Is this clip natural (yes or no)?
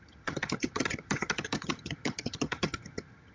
no